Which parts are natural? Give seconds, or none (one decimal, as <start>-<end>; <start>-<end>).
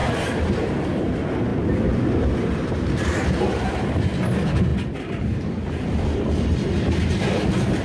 0.0-4.7